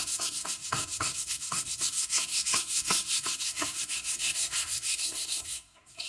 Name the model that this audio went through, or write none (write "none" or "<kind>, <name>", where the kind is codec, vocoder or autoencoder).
codec, SNAC